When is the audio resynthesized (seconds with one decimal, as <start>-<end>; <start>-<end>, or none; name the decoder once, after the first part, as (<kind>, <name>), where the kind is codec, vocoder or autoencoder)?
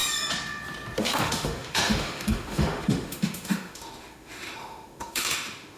1.0-5.8 (autoencoder, DAC-VAE)